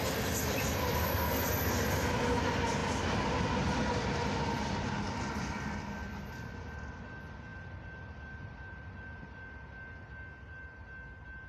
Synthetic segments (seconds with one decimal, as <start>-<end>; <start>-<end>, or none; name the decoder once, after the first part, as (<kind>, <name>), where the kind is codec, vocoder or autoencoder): none